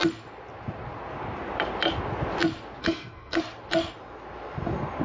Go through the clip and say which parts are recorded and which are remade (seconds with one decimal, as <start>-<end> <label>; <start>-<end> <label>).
0.0-2.8 recorded; 2.8-3.4 remade; 3.4-5.0 recorded